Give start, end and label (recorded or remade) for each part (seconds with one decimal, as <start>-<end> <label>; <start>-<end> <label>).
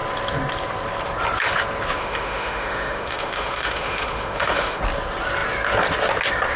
0.0-2.0 recorded; 2.0-4.8 remade; 4.8-6.6 recorded